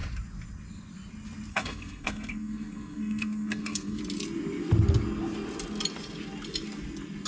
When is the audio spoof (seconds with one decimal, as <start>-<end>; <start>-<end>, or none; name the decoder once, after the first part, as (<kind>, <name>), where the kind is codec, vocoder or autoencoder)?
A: 1.5-4.0 (codec, SNAC)